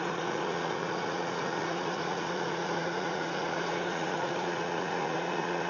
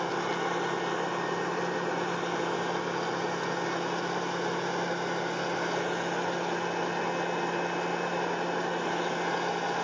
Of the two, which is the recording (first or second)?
second